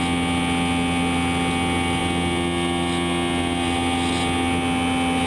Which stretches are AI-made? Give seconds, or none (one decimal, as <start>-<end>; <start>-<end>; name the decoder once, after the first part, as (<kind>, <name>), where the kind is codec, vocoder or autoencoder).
none